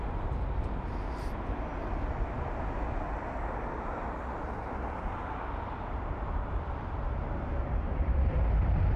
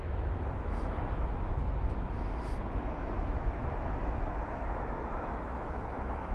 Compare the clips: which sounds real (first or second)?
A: first